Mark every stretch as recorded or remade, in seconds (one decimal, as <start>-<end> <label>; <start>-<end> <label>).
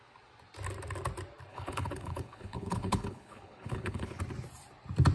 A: 0.0-1.5 recorded; 1.5-4.2 remade; 4.2-5.1 recorded